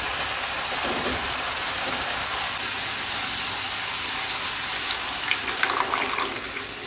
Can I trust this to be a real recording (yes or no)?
yes